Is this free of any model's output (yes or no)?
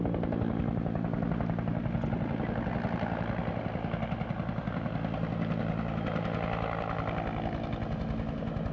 yes